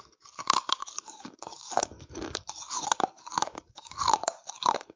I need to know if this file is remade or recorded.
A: remade